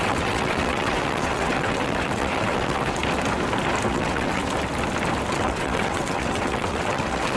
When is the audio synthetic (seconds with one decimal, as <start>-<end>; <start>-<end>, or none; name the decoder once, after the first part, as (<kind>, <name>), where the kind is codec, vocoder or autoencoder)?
0.0-3.0 (vocoder, WaveNeXt); 3.9-4.4; 5.3-7.4